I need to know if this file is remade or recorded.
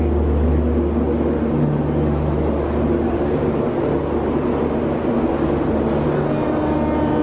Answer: recorded